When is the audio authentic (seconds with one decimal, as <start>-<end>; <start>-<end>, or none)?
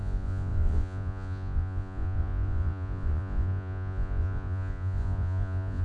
none